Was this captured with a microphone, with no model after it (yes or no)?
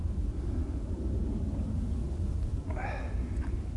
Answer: yes